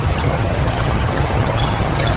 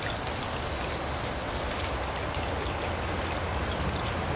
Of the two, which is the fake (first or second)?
first